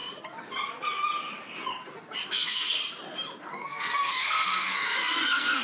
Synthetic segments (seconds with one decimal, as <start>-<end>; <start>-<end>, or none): 2.3-2.8; 3.4-5.6